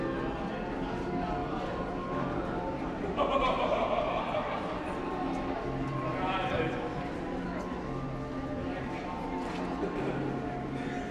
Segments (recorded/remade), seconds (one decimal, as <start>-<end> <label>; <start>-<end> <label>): 0.0-1.4 recorded; 1.4-6.6 remade; 6.6-8.7 recorded; 8.7-9.6 remade; 9.6-11.1 recorded